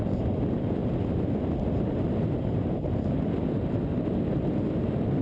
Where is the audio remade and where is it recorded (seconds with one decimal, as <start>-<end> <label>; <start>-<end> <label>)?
0.0-5.2 recorded